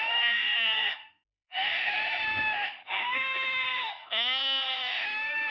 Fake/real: fake